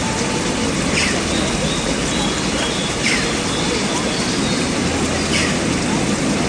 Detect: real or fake real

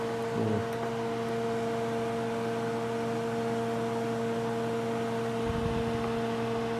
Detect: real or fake real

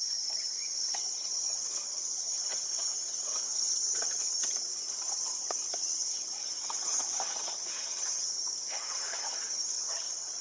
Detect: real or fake fake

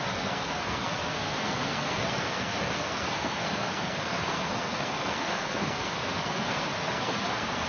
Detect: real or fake fake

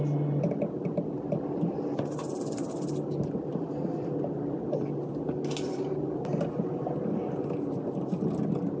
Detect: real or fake real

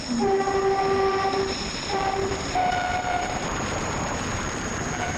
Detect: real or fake fake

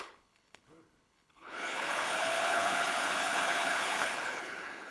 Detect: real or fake fake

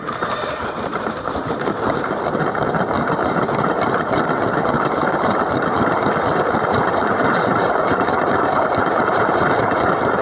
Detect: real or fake fake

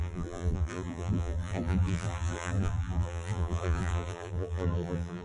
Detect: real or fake fake